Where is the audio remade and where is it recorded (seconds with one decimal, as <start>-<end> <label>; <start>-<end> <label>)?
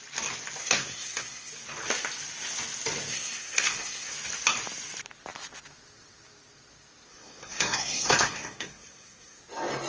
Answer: 0.0-0.6 recorded; 0.6-1.5 remade; 1.5-3.1 recorded; 3.1-4.1 remade; 4.1-7.1 recorded; 7.1-9.4 remade; 9.4-9.9 recorded